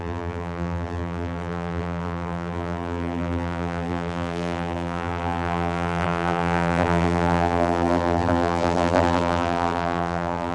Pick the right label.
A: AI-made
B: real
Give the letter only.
A